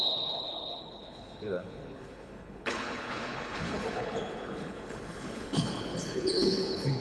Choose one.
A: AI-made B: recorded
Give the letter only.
A